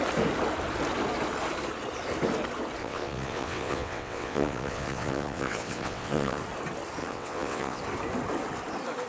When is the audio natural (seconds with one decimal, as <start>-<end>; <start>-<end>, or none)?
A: 0.0-2.8; 6.4-7.0; 7.8-9.1